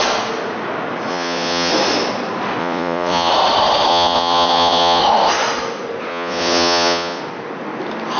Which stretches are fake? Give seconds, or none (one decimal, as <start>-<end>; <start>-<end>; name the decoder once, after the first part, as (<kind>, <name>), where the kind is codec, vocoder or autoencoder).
1.1-1.7 (vocoder, Vocos); 2.6-3.3; 3.9-5.0; 6.1-7.2